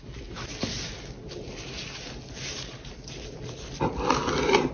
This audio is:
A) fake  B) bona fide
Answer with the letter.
B